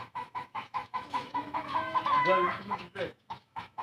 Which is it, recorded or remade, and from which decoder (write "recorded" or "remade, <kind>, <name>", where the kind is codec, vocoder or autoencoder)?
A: remade, autoencoder, DAC-VAE